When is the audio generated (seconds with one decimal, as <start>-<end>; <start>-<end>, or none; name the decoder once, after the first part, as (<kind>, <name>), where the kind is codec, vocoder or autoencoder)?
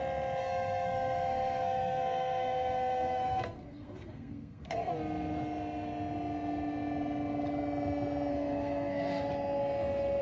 0.4-4.9 (codec, SNAC); 8.3-9.2